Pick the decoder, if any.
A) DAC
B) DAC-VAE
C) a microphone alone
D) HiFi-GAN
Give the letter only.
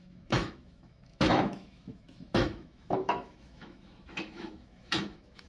B